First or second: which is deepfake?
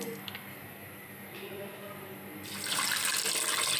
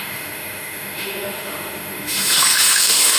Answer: second